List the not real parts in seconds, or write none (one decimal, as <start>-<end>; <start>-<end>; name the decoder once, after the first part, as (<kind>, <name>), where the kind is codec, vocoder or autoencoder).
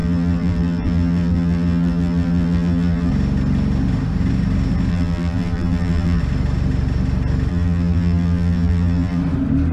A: 0.0-3.1 (vocoder, BigVGAN v2); 4.9-6.2; 7.5-9.2